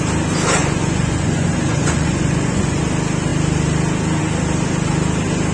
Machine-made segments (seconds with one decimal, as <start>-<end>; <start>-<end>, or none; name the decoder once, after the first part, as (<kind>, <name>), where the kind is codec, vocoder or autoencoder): 0.6-2.8 (vocoder, Vocos)